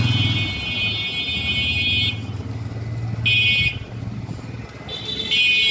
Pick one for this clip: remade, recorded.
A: recorded